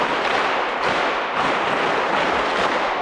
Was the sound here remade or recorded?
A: recorded